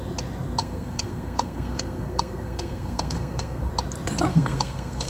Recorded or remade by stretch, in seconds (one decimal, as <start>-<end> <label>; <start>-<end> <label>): 0.0-0.6 recorded; 0.6-3.7 remade; 3.7-4.3 recorded; 4.3-5.1 remade